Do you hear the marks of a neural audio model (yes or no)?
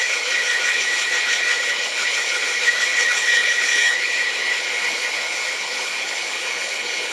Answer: yes